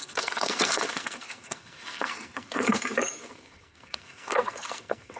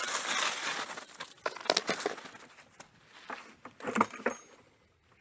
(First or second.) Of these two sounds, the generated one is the first